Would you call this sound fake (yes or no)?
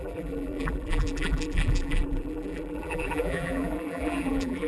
yes